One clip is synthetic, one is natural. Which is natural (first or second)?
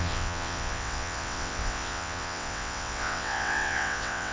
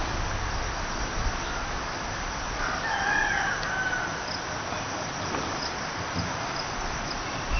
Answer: second